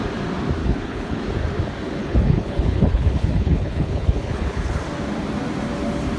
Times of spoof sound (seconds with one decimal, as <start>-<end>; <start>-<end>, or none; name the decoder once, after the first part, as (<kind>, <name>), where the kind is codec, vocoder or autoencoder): 0.6-1.2 (codec, HILCodec); 2.0-4.8